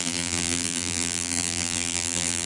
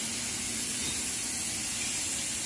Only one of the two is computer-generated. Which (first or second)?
first